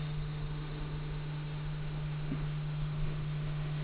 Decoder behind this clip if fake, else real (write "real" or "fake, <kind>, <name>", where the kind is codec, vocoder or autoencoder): fake, autoencoder, DAC-VAE